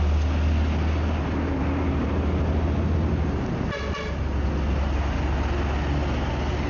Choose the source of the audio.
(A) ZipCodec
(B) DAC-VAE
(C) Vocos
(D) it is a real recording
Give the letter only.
D